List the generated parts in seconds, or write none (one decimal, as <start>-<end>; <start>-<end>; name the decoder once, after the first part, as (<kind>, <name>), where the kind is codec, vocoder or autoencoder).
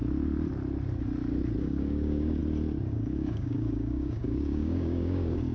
1.6-2.4 (codec, DAC); 2.9-5.5